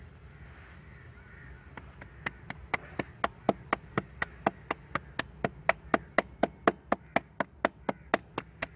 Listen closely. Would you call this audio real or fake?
real